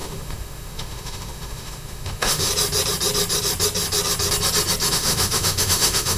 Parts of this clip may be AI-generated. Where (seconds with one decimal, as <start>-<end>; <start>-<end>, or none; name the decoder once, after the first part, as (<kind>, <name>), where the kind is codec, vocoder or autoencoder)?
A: 0.0-2.5 (autoencoder, DAC-VAE); 4.9-6.2